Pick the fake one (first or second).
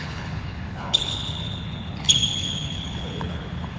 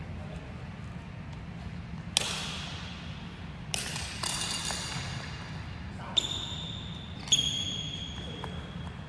first